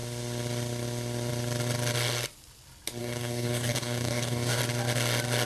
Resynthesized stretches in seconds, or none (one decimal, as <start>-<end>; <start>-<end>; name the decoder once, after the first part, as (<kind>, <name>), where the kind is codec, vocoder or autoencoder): 3.0-4.6 (codec, DAC)